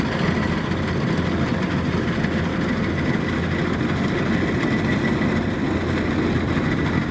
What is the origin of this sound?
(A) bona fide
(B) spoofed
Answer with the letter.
A